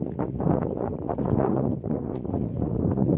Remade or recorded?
remade